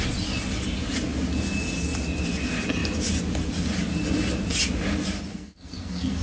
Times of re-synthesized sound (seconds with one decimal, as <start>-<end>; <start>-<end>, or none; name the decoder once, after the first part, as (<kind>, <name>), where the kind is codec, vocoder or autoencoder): 5.3-6.2 (codec, SNAC)